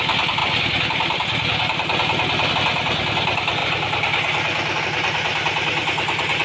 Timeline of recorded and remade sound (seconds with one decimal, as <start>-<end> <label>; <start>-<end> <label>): 0.0-6.4 recorded